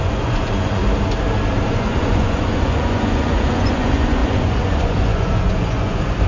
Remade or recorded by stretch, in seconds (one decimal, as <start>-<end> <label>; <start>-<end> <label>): 0.0-0.8 remade; 0.8-1.7 recorded; 1.7-6.3 remade